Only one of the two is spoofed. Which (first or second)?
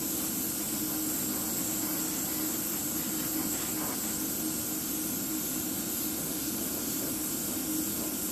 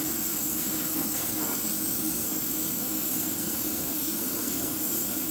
second